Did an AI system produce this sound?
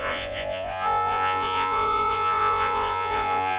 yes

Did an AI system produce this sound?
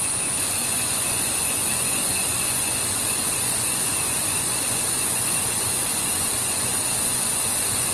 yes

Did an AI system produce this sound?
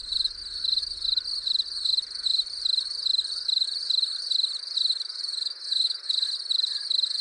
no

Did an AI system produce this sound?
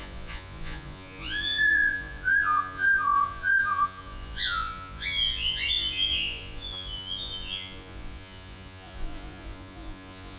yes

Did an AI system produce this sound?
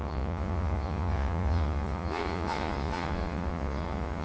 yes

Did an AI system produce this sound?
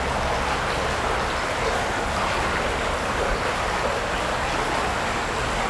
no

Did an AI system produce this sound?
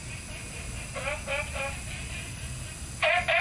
no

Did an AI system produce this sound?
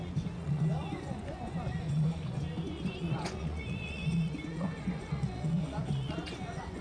yes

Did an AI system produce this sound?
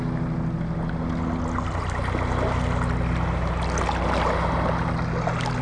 no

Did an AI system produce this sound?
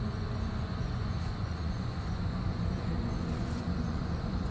yes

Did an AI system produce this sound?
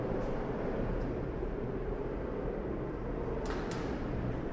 no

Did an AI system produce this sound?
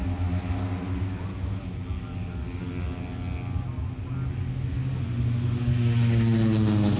no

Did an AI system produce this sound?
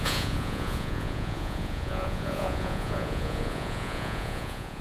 yes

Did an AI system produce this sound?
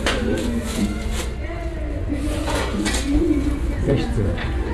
yes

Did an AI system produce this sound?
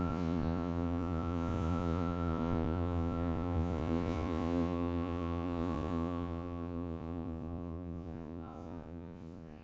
yes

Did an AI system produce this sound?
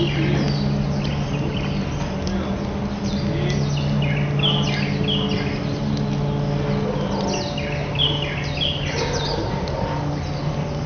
no